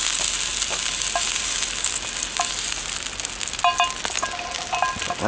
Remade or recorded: recorded